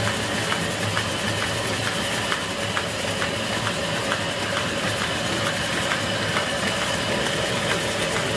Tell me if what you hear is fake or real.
real